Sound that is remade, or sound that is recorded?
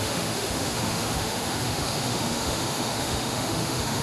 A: remade